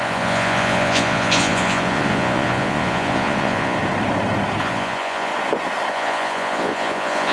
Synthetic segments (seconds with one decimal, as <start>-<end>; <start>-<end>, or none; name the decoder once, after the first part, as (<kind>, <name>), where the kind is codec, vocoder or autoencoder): 0.0-3.8 (vocoder, Vocos); 4.6-5.3; 5.9-7.3